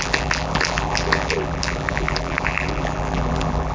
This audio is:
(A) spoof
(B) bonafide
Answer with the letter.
A